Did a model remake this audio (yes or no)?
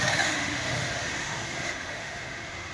yes